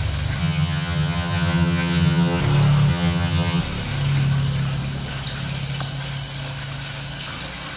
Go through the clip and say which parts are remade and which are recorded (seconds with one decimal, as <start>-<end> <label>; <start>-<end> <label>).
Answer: 0.0-0.4 recorded; 0.4-2.4 remade; 2.4-2.9 recorded; 2.9-3.6 remade; 3.6-7.8 recorded